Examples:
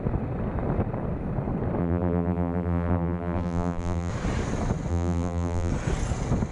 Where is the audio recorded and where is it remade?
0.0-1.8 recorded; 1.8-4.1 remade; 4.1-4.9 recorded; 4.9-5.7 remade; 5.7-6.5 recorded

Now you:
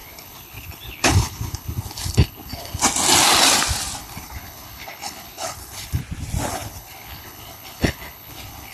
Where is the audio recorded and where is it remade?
0.0-2.8 remade; 2.8-4.0 recorded; 4.0-6.0 remade; 6.0-6.5 recorded; 6.5-8.7 remade